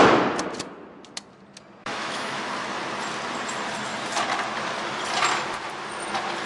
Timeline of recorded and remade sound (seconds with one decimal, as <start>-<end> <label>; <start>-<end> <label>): 0.0-1.8 recorded; 1.8-2.4 remade; 2.4-6.5 recorded